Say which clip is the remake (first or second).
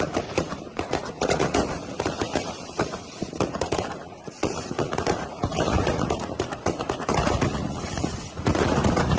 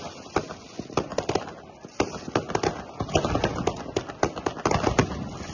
first